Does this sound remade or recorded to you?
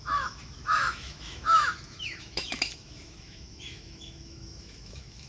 remade